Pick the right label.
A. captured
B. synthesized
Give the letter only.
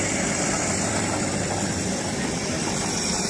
B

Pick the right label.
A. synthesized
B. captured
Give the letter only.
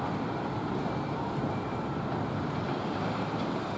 A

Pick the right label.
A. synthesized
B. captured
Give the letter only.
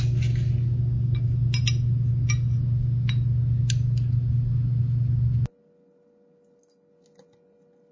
B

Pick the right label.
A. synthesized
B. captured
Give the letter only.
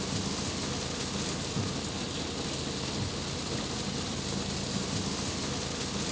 B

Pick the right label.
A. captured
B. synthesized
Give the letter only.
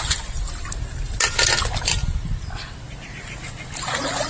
A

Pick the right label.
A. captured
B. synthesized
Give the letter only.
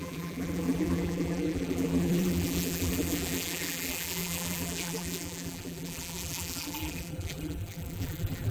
B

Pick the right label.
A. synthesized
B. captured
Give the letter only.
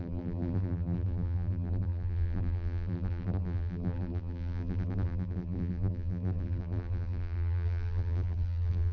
A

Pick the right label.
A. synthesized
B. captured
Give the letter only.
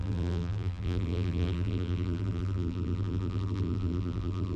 A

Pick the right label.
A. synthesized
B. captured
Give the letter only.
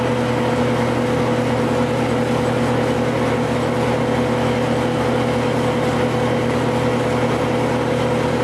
B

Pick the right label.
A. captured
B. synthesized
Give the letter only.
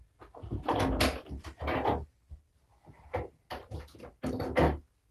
A